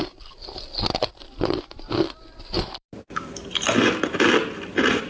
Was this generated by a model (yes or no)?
yes